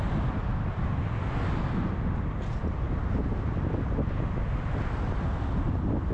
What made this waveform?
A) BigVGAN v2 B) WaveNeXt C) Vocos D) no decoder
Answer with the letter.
D